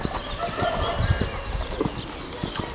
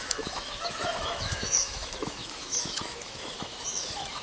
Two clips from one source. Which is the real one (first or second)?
first